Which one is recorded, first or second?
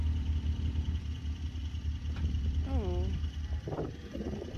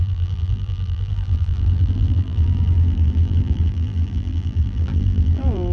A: first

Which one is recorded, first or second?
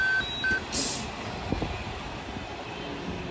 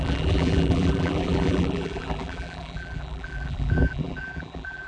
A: first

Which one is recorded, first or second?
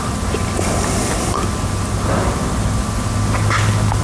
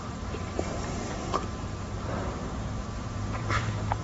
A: first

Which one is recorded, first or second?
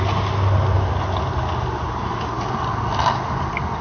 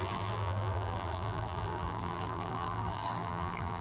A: first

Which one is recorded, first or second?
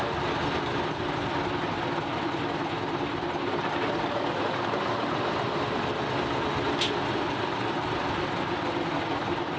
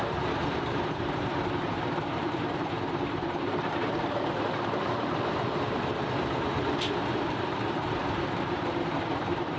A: first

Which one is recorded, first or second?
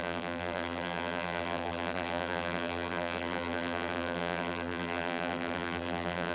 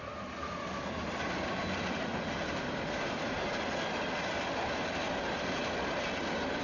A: second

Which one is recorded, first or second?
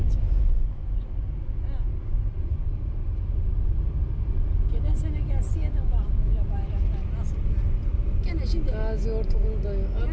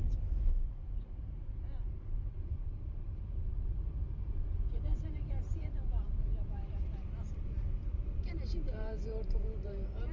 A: first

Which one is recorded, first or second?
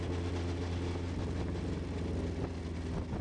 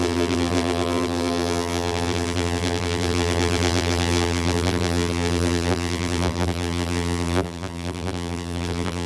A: first